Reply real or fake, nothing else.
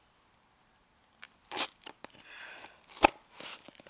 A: real